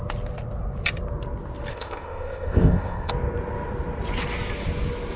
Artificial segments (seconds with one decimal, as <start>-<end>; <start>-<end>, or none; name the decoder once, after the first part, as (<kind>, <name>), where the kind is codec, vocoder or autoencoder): 1.7-3.1 (codec, ZipCodec)